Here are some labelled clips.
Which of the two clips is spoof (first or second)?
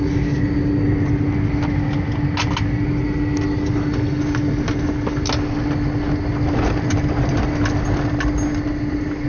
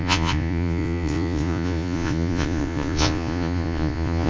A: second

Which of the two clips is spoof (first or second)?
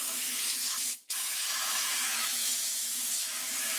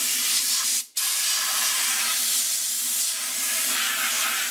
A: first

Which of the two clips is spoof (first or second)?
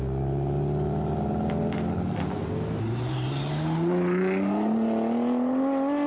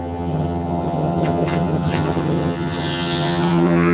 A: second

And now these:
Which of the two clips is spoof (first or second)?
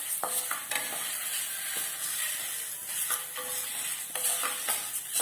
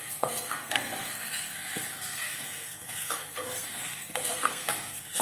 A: second